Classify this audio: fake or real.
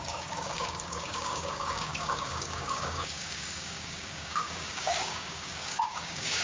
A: fake